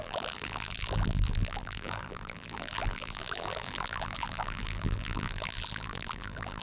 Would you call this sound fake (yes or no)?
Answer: yes